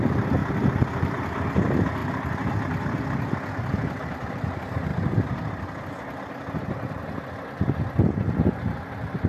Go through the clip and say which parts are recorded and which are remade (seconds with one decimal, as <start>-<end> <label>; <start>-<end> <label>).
0.0-9.3 recorded